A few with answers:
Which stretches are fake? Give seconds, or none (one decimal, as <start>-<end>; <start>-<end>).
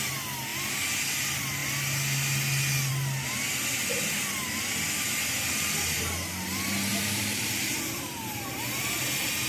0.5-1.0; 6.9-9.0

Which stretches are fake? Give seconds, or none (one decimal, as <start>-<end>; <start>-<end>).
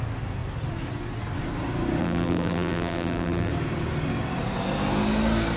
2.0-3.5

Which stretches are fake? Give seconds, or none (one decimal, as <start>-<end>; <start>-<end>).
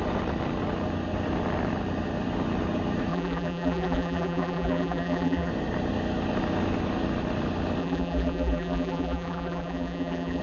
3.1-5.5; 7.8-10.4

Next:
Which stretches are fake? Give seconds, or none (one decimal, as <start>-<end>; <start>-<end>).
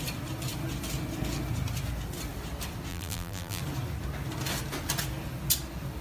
2.9-3.6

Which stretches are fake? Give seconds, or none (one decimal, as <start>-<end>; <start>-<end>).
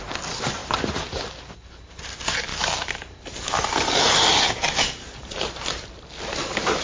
0.6-2.0; 2.5-6.0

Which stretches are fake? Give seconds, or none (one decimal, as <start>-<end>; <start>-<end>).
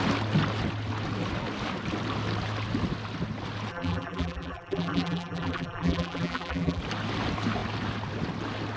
3.7-6.8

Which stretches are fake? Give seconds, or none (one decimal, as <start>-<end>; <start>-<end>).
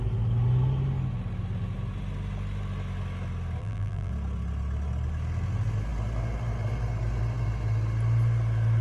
3.6-4.1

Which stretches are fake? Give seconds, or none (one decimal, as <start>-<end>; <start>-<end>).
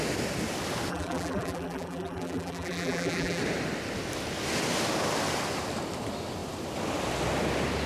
0.9-3.4